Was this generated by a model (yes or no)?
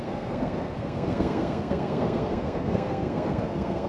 yes